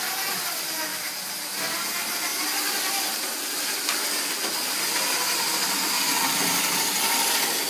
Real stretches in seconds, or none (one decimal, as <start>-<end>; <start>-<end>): 0.0-0.9; 1.5-2.3; 3.8-7.7